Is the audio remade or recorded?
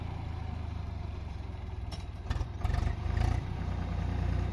remade